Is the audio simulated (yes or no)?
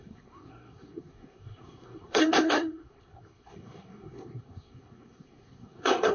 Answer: yes